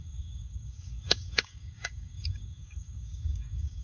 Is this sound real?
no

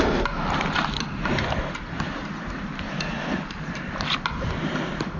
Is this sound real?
yes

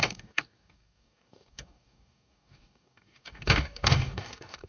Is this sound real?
no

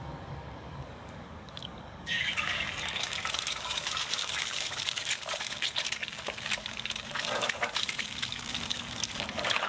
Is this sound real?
no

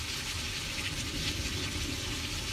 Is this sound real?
yes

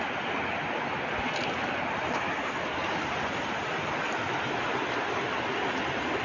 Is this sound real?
yes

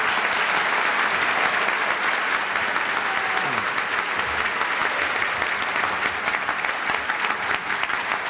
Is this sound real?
yes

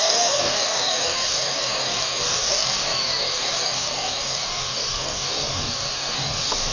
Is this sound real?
no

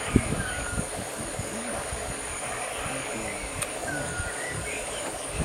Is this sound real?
no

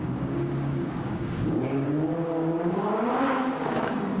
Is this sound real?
no